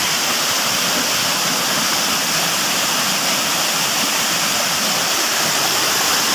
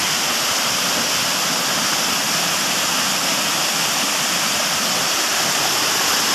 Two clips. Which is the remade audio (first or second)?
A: first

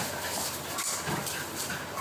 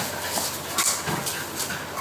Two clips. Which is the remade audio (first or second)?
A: first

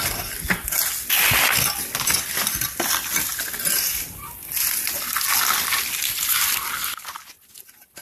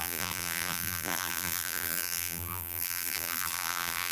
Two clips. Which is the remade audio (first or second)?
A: second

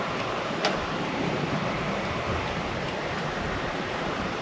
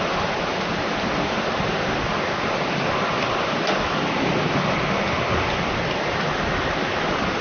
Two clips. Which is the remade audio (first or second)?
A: first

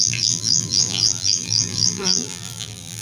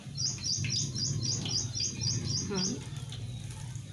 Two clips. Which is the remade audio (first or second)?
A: first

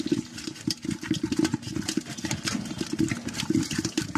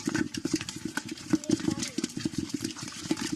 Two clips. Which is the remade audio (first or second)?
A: second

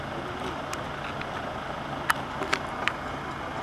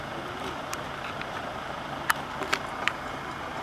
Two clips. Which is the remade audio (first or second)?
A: second